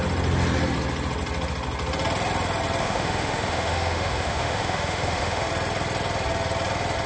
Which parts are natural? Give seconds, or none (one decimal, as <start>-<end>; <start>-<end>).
0.0-2.8; 5.5-7.1